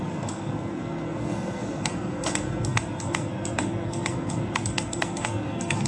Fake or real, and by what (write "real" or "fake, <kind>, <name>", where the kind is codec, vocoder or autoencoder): fake, codec, SNAC